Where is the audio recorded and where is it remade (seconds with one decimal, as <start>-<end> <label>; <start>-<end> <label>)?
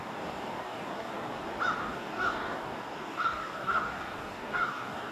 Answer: 0.0-1.3 remade; 1.3-1.8 recorded; 1.8-5.1 remade